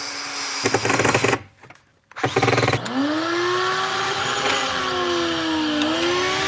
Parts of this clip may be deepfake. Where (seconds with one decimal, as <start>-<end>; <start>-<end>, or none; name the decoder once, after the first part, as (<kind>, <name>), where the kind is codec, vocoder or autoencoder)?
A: 3.9-4.8 (vocoder, WaveNeXt)